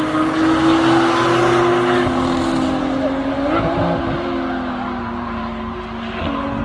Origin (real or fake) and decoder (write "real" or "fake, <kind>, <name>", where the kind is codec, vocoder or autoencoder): real